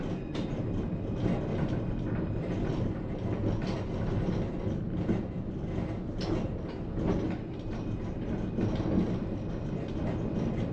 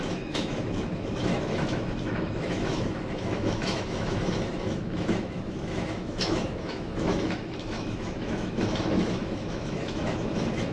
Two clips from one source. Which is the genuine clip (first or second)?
first